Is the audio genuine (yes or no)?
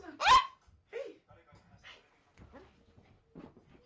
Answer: yes